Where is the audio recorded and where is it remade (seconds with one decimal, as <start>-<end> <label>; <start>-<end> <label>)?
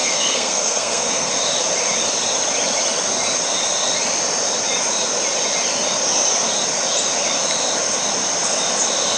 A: 0.0-1.3 remade; 1.3-9.2 recorded